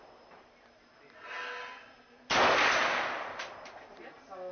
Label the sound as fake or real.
real